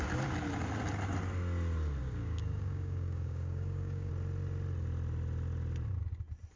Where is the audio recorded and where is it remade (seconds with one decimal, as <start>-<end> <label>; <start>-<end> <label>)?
0.0-2.0 recorded; 2.0-4.1 remade; 4.1-6.6 recorded